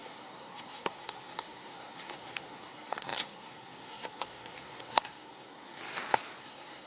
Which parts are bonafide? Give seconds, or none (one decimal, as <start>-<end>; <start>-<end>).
5.8-6.4